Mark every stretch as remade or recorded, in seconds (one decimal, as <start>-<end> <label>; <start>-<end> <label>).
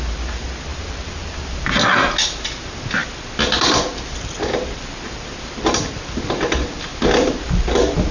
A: 0.0-8.1 recorded